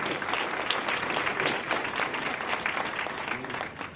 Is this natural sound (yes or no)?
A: yes